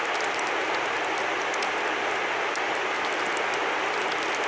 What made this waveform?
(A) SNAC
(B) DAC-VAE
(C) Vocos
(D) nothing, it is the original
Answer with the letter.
D